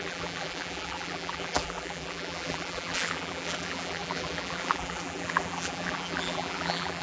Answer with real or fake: fake